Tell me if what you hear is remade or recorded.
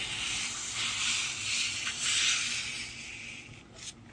recorded